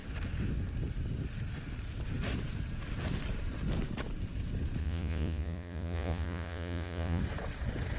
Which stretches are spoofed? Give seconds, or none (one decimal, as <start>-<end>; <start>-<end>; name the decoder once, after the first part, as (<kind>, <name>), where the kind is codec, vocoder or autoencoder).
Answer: 4.8-7.2 (vocoder, Vocos)